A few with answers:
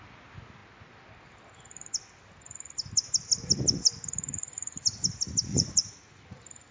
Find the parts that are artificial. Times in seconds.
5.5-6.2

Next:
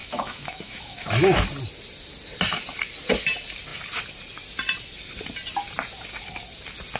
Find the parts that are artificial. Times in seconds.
0.0-1.1

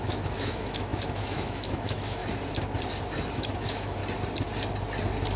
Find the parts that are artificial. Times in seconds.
0.0-2.2; 3.3-4.0